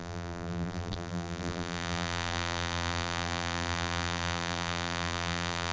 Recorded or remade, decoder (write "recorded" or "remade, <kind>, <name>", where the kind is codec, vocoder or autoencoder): remade, vocoder, BigVGAN v2